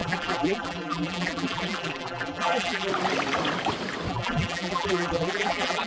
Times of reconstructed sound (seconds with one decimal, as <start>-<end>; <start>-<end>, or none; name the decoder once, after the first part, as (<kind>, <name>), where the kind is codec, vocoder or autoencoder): 0.0-2.9 (vocoder, BigVGAN v2); 4.1-5.9